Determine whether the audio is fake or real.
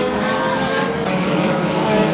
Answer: fake